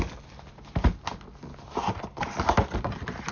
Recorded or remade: recorded